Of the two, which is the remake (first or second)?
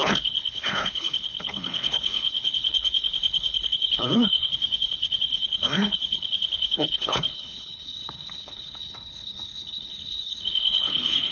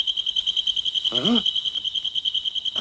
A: first